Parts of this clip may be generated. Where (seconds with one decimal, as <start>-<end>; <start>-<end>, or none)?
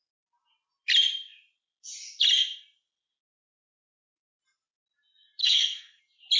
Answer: 5.4-6.0